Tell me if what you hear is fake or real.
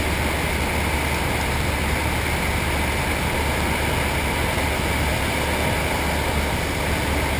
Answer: real